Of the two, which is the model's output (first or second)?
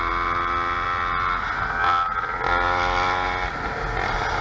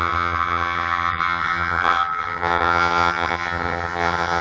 second